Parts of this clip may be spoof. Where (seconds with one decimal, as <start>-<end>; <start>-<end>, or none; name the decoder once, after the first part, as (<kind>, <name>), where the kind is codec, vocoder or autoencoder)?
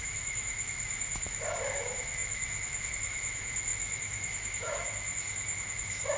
0.0-6.2 (autoencoder, DAC-VAE)